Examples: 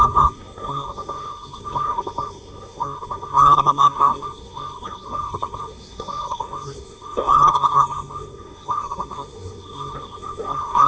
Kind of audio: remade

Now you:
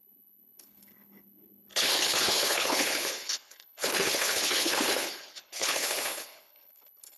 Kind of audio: remade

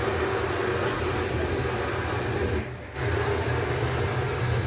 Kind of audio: recorded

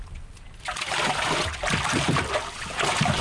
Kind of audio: recorded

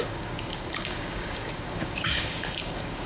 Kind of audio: remade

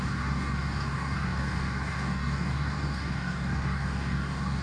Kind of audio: remade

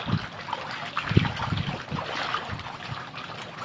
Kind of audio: recorded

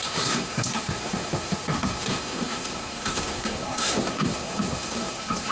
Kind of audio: remade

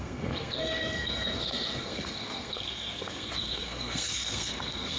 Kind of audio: remade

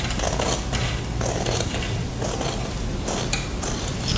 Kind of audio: recorded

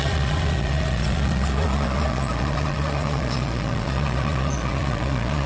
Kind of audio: remade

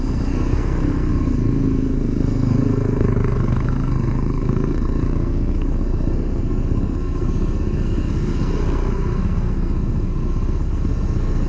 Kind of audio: remade